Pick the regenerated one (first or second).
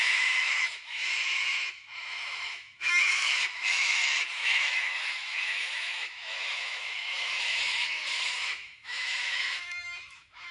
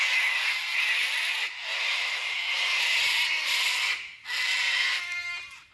first